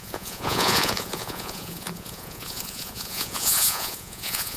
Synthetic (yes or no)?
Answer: yes